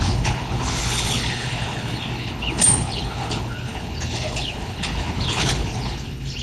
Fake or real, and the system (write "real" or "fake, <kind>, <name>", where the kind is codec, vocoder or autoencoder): fake, codec, HILCodec